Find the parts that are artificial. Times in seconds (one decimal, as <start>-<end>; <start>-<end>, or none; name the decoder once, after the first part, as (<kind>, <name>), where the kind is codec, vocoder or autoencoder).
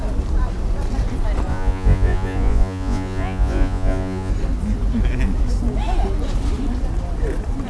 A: 1.5-4.3 (vocoder, Vocos)